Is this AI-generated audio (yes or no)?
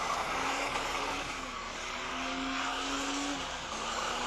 yes